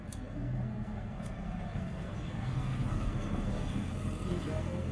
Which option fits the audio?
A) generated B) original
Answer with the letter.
A